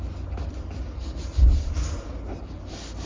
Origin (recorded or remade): recorded